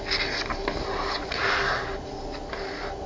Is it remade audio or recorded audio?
recorded